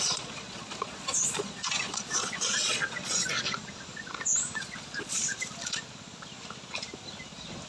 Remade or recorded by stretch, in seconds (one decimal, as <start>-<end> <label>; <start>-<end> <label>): 0.0-3.0 remade; 3.0-4.6 recorded; 4.6-5.3 remade; 5.3-7.7 recorded